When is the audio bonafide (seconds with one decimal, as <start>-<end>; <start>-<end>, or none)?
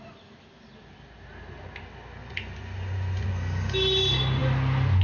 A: 0.0-2.2; 3.3-5.0